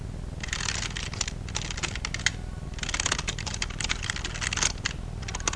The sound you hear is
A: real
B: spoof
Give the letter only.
A